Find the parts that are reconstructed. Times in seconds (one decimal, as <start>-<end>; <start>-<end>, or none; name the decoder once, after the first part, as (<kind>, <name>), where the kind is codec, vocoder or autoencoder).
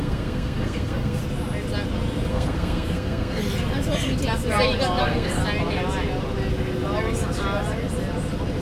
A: 0.0-1.2 (codec, SNAC); 2.3-3.4; 5.0-5.4